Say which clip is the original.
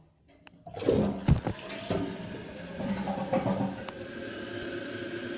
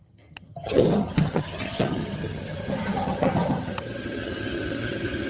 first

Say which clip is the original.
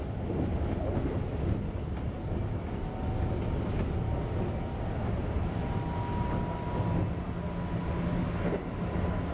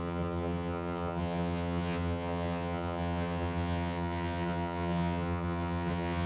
first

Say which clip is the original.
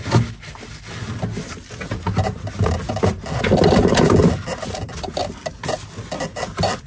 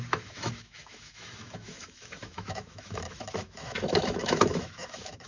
first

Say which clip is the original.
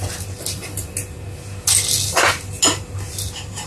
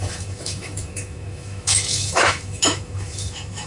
first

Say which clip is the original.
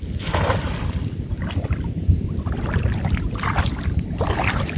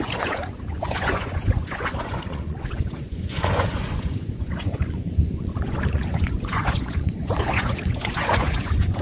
first